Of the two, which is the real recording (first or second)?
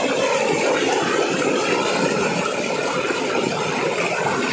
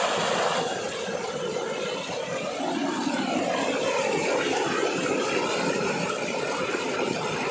second